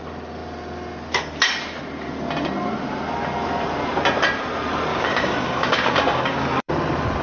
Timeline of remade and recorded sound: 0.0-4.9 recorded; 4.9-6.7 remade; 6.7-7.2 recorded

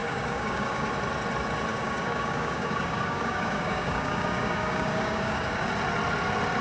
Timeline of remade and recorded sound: 0.0-0.9 remade; 0.9-1.7 recorded; 1.7-5.7 remade; 5.7-6.6 recorded

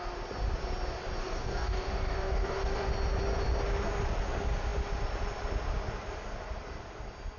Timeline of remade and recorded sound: 0.0-1.2 recorded; 1.2-2.9 remade; 2.9-7.4 recorded

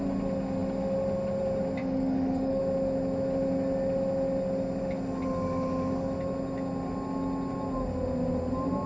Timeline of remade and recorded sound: 0.0-1.8 recorded; 1.8-2.6 remade; 2.6-8.9 recorded

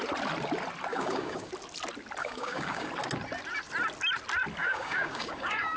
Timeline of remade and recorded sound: 0.0-0.9 recorded; 0.9-1.5 remade; 1.5-2.2 recorded; 2.2-2.9 remade; 2.9-4.6 recorded; 4.6-5.8 remade

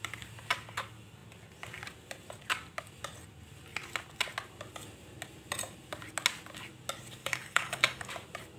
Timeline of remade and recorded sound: 0.0-7.2 recorded; 7.2-8.1 remade; 8.1-8.6 recorded